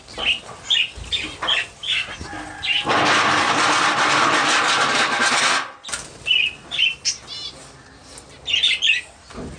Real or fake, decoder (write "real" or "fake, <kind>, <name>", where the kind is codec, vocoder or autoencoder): real